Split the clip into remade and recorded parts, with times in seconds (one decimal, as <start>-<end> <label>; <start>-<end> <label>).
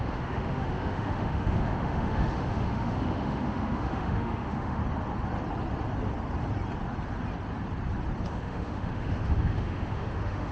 0.0-4.8 remade; 4.8-8.3 recorded; 8.3-10.5 remade